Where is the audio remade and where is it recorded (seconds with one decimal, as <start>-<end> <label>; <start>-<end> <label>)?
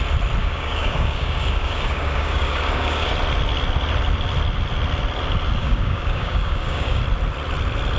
0.0-0.4 recorded; 0.4-3.1 remade; 3.1-5.6 recorded; 5.6-7.0 remade; 7.0-8.0 recorded